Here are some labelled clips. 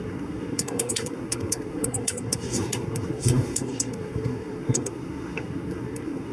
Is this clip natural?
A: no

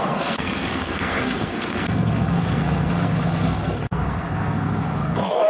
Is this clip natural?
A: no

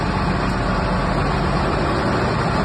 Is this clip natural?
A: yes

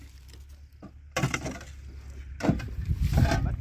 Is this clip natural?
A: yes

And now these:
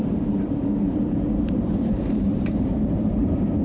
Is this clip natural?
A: no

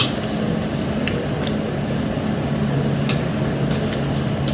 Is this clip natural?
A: yes